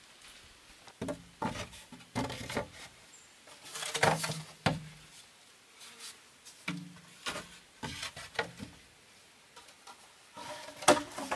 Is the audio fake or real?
real